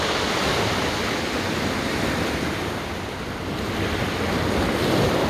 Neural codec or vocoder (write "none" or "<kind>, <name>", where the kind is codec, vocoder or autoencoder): none